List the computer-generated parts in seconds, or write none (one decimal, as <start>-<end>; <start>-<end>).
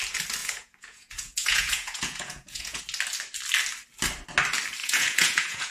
0.4-2.8; 4.8-5.7